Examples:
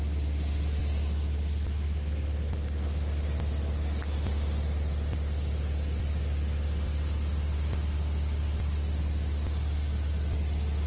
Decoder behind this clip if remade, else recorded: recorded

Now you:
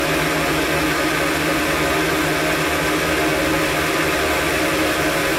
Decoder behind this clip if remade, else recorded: recorded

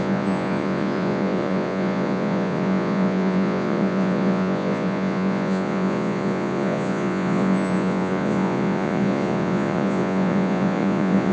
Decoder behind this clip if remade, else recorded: remade, vocoder, Vocos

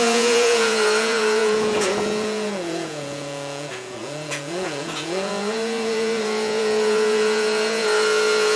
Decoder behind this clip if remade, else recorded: remade, vocoder, Vocos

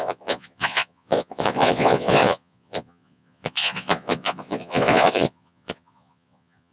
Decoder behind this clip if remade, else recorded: remade, vocoder, Vocos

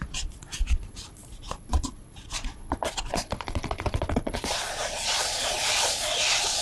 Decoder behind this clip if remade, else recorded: remade, vocoder, Vocos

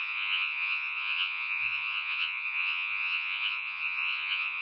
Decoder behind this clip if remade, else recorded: remade, vocoder, Vocos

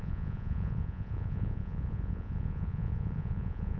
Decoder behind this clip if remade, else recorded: remade, vocoder, Vocos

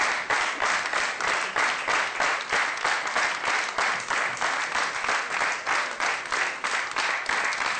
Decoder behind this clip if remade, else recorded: recorded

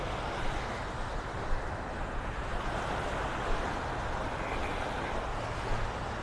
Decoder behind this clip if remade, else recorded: recorded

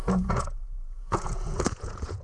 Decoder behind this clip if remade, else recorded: remade, vocoder, Vocos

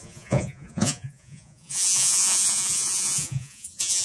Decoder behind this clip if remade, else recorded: remade, vocoder, Vocos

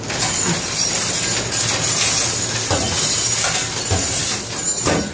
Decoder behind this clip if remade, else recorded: recorded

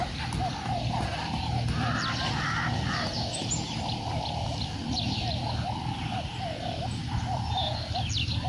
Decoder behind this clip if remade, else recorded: recorded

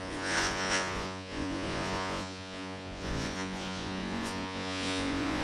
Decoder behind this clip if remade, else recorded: remade, vocoder, Vocos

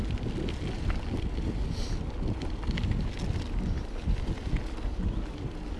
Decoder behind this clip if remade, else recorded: recorded